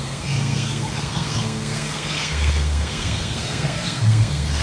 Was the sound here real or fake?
fake